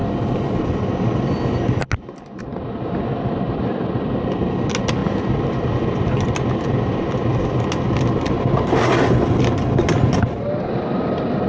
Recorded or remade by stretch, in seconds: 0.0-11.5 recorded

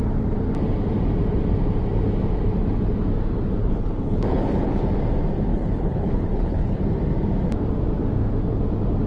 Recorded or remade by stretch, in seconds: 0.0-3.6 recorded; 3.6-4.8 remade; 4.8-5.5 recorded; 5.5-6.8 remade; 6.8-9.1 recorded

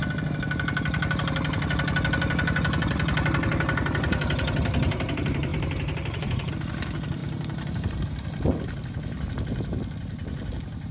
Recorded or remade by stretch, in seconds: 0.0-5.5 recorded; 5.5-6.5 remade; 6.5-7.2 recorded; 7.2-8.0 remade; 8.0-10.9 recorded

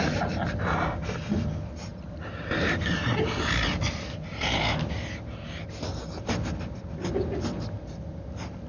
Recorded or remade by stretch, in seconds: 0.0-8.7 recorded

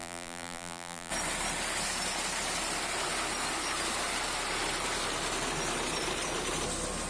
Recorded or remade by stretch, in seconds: 0.0-1.1 remade; 1.1-7.1 recorded